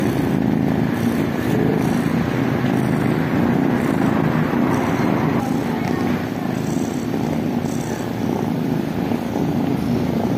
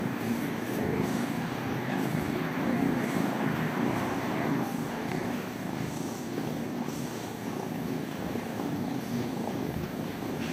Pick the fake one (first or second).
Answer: second